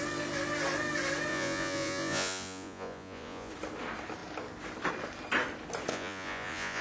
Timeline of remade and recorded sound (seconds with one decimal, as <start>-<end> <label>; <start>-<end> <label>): 0.0-1.3 recorded; 1.3-3.5 remade; 3.5-5.9 recorded; 5.9-6.8 remade